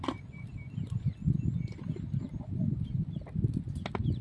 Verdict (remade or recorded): recorded